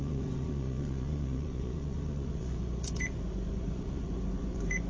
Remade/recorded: remade